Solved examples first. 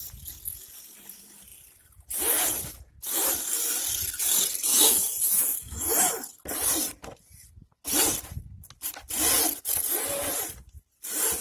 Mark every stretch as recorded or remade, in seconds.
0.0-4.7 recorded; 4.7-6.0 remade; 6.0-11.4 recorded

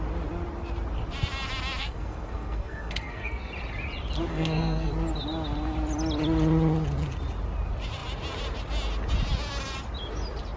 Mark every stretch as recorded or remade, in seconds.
0.0-1.8 recorded; 1.8-3.5 remade; 3.5-4.3 recorded; 4.3-4.9 remade; 4.9-10.6 recorded

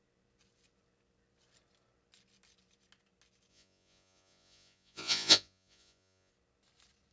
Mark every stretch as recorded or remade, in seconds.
0.0-3.5 recorded; 3.5-6.3 remade; 6.3-7.1 recorded

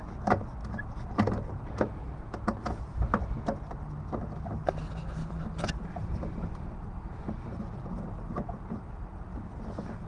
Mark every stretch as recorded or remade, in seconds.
0.0-0.6 recorded; 0.6-3.2 remade; 3.2-5.2 recorded; 5.2-7.6 remade; 7.6-10.1 recorded

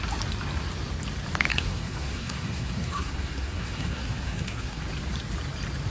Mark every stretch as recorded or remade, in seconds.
0.0-1.5 recorded; 1.5-4.8 remade; 4.8-5.9 recorded

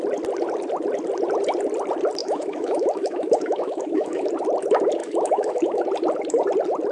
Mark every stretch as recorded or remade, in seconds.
0.0-2.2 recorded; 2.2-4.3 remade; 4.3-5.0 recorded; 5.0-5.8 remade; 5.8-6.9 recorded

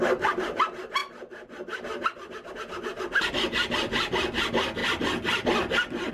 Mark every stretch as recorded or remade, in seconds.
0.0-6.1 recorded

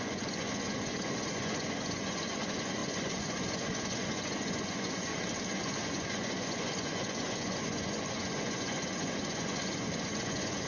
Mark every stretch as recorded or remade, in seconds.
0.0-5.1 remade; 5.1-5.6 recorded; 5.6-10.7 remade